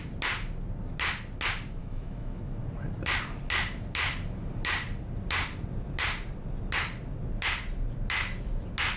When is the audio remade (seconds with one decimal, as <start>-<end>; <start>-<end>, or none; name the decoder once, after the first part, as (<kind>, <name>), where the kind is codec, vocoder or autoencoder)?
1.8-2.4 (autoencoder, DAC-VAE)